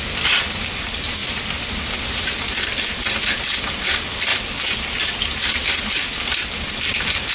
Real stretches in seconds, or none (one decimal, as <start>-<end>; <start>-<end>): 0.0-4.3; 6.2-7.3